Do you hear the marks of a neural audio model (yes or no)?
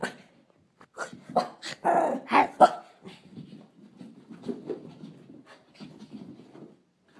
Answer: no